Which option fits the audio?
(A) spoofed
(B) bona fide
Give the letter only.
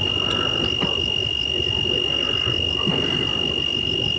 B